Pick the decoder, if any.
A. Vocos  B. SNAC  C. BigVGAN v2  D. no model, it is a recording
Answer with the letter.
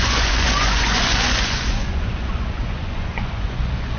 A